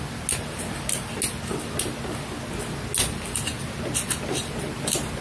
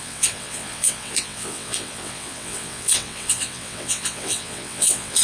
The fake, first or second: second